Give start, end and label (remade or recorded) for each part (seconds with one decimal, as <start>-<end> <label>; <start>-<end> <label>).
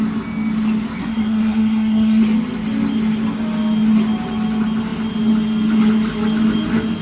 0.0-1.0 recorded; 1.0-2.2 remade; 2.2-7.0 recorded